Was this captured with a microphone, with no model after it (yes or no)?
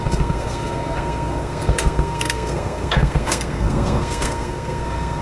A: no